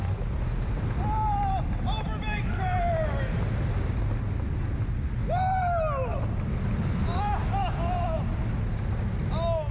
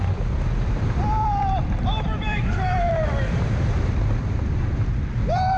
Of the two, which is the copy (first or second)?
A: second